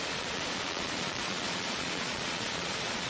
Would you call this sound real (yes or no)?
no